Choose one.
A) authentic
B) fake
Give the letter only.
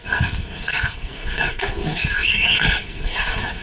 B